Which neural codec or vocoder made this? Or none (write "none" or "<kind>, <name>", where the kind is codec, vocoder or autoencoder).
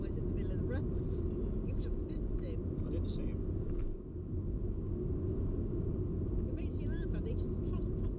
none